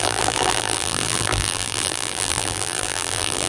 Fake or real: fake